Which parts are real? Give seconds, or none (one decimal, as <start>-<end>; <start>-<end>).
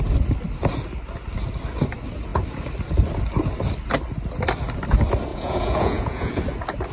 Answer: 0.0-5.3; 6.4-6.9